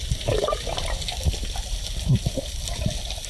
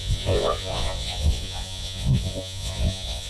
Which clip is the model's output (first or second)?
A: second